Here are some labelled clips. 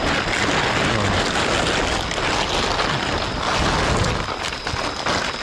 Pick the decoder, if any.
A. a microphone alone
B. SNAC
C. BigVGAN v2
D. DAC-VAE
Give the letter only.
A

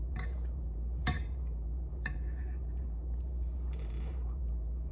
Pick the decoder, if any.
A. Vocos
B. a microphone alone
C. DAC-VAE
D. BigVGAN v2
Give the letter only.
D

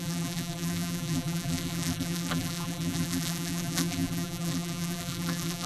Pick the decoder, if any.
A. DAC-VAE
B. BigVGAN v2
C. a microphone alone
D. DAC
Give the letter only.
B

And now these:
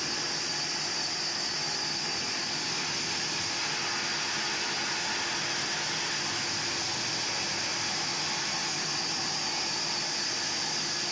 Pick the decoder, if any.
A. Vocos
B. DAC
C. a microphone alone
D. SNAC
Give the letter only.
C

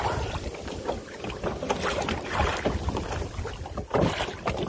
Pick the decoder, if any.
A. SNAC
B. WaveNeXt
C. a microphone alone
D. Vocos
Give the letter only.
C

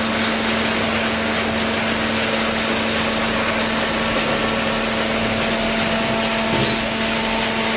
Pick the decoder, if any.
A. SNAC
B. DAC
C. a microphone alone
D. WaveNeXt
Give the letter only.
C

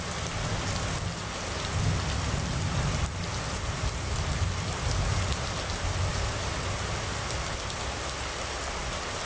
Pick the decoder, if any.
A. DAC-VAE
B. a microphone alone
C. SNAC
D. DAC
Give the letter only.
B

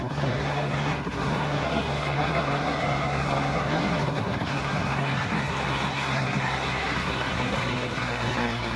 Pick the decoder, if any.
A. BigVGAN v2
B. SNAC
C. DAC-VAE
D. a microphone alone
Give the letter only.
B